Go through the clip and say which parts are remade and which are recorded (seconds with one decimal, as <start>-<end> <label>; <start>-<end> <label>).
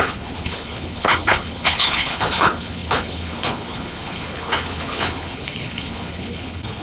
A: 0.0-6.8 remade